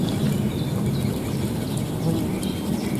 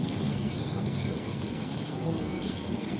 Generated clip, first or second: second